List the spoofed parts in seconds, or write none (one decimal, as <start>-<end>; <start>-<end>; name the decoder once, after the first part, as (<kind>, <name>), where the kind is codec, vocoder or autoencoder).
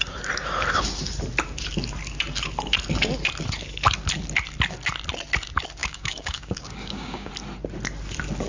5.8-7.3 (codec, DAC)